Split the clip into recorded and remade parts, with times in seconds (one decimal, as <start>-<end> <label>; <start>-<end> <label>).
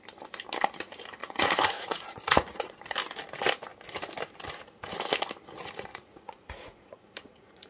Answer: 0.0-1.2 recorded; 1.2-2.7 remade; 2.7-5.9 recorded; 5.9-7.7 remade